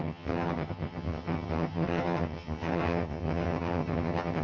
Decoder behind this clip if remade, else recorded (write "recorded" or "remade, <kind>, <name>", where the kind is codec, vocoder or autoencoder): remade, vocoder, HiFi-GAN